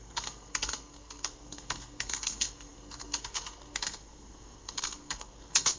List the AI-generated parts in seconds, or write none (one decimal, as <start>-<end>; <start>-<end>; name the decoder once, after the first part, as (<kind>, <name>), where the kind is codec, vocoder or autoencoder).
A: 0.0-5.8 (codec, SNAC)